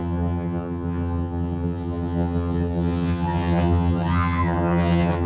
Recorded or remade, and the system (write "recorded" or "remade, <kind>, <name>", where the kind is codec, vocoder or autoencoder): remade, vocoder, HiFi-GAN